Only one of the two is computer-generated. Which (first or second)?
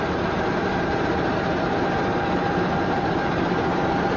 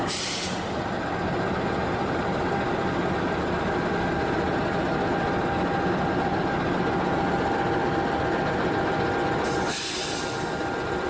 first